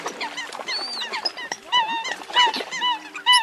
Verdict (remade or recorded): recorded